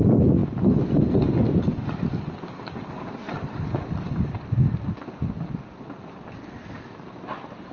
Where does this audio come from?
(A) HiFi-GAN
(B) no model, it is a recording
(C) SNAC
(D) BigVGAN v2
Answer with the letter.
B